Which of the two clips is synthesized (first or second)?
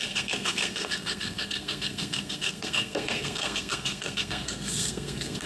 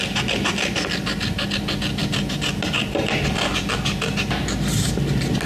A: first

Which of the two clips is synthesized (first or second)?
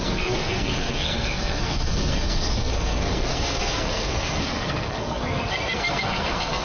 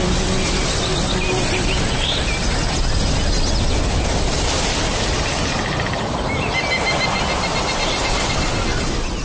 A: first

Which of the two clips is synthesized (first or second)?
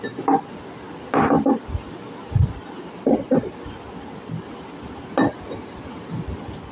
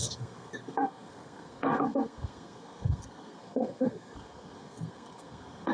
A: second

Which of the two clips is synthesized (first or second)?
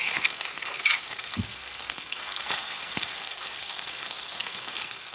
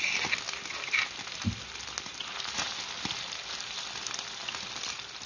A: first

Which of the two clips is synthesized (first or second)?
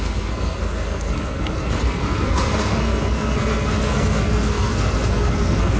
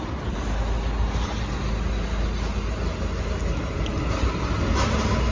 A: first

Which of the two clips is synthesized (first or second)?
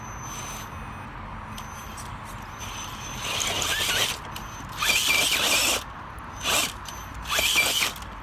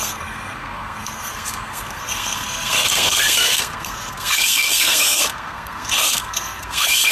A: second